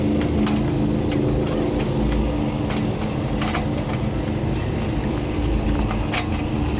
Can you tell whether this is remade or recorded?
recorded